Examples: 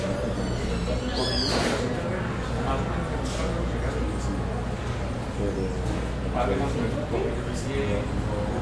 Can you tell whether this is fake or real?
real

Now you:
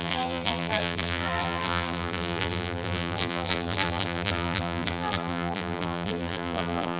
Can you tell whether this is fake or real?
fake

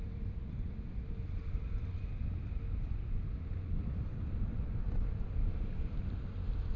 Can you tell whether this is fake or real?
fake